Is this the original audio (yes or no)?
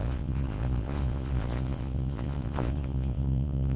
no